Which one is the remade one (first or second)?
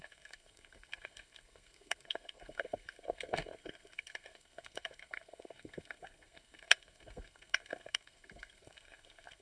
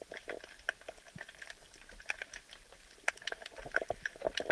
first